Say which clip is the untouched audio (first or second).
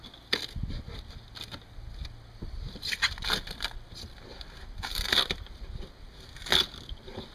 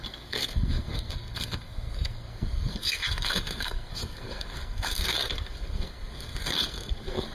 first